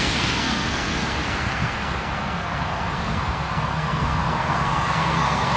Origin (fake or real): fake